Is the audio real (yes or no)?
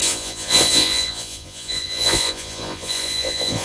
no